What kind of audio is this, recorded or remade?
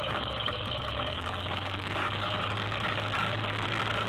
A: remade